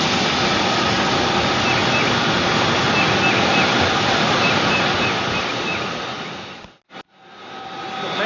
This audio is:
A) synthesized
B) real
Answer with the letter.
B